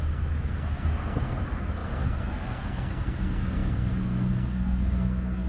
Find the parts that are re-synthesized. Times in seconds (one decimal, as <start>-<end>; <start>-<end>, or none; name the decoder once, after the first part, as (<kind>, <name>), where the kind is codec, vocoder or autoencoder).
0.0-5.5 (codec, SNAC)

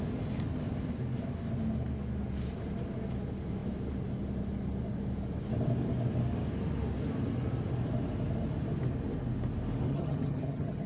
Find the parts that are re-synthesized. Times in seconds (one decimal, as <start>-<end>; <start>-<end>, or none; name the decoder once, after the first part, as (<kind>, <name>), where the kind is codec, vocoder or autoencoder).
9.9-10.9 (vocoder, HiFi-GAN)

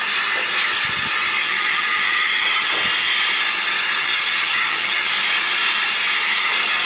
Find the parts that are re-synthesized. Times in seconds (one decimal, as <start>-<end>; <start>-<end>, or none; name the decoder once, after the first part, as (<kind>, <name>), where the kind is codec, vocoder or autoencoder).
1.4-2.7 (vocoder, HiFi-GAN); 4.0-5.1

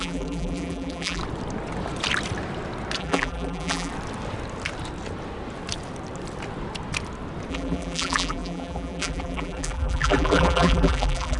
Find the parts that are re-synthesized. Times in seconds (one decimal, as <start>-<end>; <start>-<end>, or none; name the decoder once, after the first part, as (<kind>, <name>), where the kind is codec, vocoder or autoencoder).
0.0-1.2 (vocoder, BigVGAN v2); 3.0-3.9; 7.5-11.4

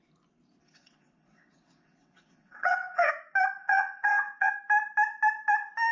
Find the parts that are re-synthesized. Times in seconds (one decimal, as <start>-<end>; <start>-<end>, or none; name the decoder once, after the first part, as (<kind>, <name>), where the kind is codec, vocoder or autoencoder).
0.6-3.1 (vocoder, WaveNeXt); 3.6-4.5

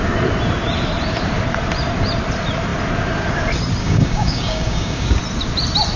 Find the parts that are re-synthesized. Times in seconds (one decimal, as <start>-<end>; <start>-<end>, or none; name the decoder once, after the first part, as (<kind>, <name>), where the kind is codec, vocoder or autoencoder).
3.8-5.2 (codec, DAC)

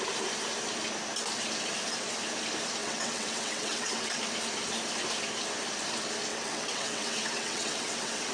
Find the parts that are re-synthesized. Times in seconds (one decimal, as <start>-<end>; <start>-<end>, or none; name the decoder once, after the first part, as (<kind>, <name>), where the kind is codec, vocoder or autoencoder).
2.8-4.2 (vocoder, WaveNeXt); 6.3-8.3